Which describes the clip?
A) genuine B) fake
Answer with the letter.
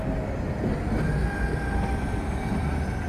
A